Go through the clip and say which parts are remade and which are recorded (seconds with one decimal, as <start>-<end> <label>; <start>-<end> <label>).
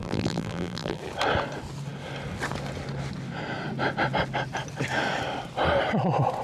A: 0.0-1.0 remade; 1.0-6.4 recorded